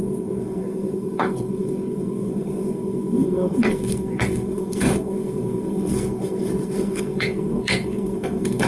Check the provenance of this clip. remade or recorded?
remade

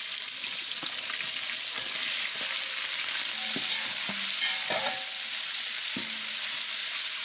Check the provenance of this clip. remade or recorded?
recorded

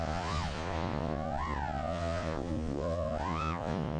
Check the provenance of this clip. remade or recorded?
remade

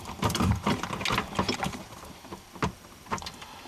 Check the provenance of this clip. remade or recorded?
recorded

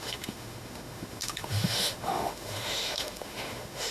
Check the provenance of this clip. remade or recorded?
remade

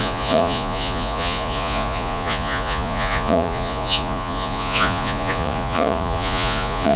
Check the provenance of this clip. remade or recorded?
remade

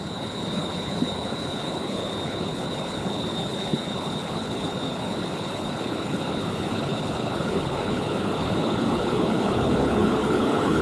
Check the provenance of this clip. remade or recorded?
remade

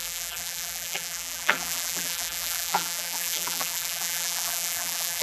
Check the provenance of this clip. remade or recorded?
remade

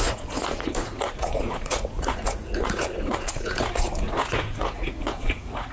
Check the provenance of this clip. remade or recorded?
remade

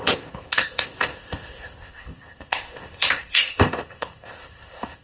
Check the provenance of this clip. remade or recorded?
remade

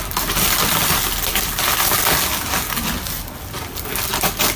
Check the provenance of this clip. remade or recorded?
recorded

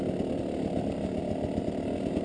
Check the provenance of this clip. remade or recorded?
recorded